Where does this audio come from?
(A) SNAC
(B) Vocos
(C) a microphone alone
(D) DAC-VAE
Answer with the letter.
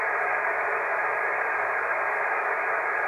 D